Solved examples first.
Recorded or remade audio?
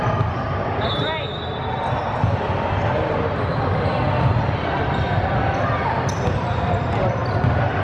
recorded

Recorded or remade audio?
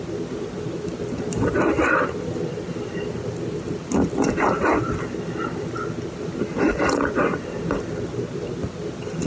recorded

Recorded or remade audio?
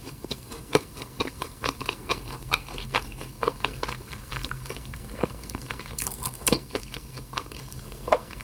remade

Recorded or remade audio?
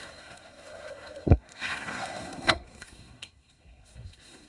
remade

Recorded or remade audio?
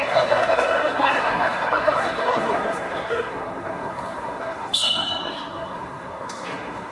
remade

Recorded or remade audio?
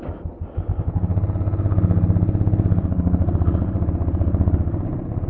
recorded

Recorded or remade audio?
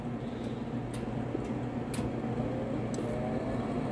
recorded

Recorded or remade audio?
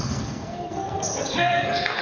remade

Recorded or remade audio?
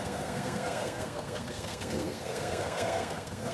remade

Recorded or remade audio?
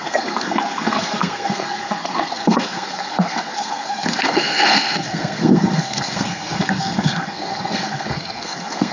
remade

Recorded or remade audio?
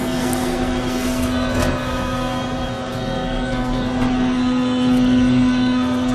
remade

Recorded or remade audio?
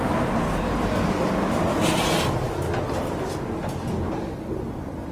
recorded